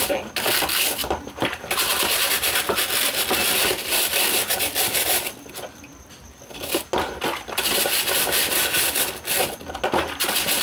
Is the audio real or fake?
real